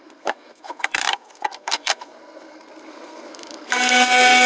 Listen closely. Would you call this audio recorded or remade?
remade